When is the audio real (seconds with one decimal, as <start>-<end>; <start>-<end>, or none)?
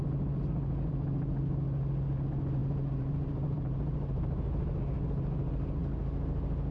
0.0-2.6; 4.8-6.7